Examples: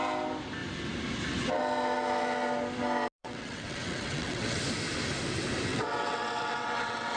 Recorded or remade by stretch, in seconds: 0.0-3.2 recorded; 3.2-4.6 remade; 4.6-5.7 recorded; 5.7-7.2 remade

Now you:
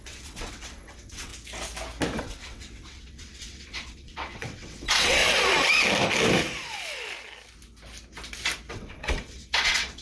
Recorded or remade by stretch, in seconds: 0.0-1.3 remade; 1.3-2.2 recorded; 2.2-5.2 remade; 5.2-8.7 recorded; 8.7-10.0 remade

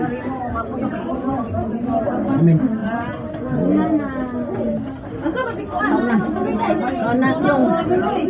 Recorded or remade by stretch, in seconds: 0.0-8.3 recorded

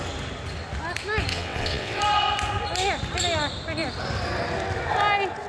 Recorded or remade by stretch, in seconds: 0.0-1.3 recorded; 1.3-2.0 remade; 2.0-5.5 recorded

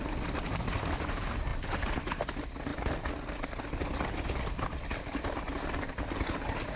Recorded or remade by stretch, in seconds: 0.0-6.8 recorded

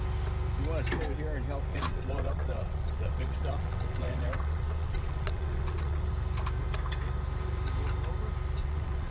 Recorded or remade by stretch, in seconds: 0.0-1.7 recorded; 1.7-6.1 remade; 6.1-8.6 recorded; 8.6-9.1 remade

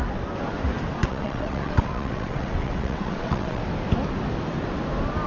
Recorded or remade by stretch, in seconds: 0.0-1.0 recorded; 1.0-3.6 remade; 3.6-5.3 recorded